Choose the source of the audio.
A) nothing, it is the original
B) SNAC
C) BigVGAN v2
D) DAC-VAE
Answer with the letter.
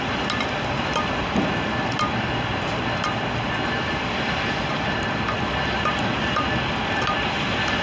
A